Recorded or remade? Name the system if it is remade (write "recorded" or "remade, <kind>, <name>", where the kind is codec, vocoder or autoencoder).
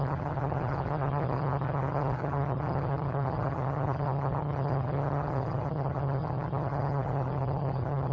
remade, vocoder, HiFi-GAN